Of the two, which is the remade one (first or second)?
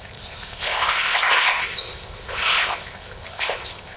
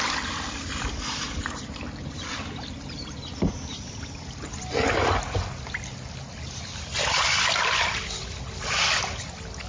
first